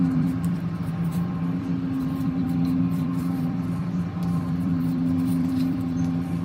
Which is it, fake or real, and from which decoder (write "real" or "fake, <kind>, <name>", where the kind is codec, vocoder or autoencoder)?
fake, vocoder, BigVGAN v2